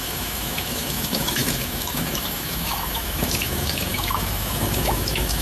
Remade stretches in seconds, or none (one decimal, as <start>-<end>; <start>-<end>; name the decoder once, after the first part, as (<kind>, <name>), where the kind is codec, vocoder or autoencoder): 0.0-5.4 (autoencoder, DAC-VAE)